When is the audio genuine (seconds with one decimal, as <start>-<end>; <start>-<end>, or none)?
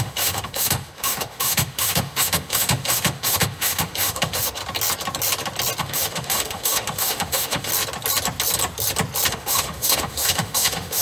4.6-5.8; 7.7-9.3